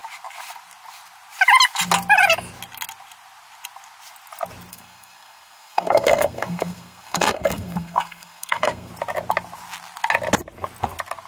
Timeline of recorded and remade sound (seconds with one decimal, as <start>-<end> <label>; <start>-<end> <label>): 0.0-4.7 recorded; 4.7-8.9 remade; 8.9-11.3 recorded